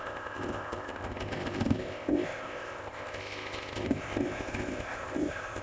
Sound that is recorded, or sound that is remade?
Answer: remade